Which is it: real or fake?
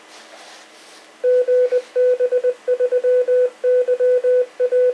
real